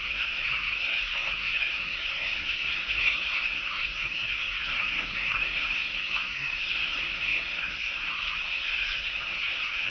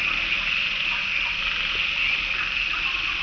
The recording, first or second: second